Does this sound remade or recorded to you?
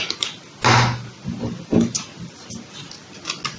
recorded